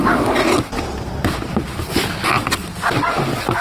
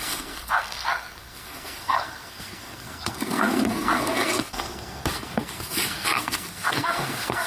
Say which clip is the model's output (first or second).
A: second